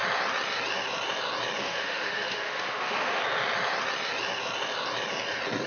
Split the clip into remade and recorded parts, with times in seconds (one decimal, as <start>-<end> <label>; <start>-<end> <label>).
0.0-1.6 recorded; 1.6-3.2 remade; 3.2-5.7 recorded

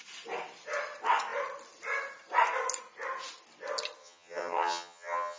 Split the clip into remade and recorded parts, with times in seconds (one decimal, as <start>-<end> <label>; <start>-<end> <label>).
0.0-4.0 recorded; 4.0-5.4 remade

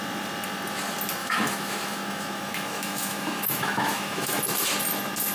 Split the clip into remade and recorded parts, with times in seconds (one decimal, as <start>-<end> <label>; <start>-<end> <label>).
0.0-1.2 recorded; 1.2-4.4 remade; 4.4-5.3 recorded

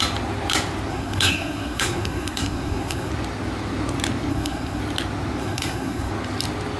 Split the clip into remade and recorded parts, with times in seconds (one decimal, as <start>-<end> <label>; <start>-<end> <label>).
0.0-0.9 recorded; 0.9-3.1 remade; 3.1-4.3 recorded; 4.3-4.8 remade; 4.8-5.4 recorded; 5.4-6.1 remade; 6.1-6.8 recorded